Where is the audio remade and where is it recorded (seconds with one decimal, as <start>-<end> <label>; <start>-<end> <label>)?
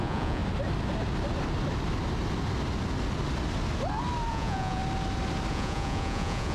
0.0-0.4 remade; 0.4-4.3 recorded; 4.3-4.8 remade; 4.8-5.5 recorded; 5.5-6.5 remade